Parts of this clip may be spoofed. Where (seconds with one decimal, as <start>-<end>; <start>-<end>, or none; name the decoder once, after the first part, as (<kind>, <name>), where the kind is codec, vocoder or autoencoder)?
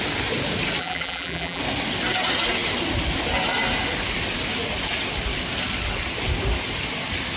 0.8-1.6 (vocoder, BigVGAN v2)